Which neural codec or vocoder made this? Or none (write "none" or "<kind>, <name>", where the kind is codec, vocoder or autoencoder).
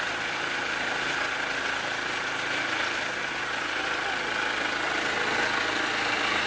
none